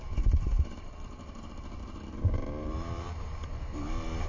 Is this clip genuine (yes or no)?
no